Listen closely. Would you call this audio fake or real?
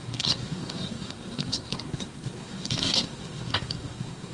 fake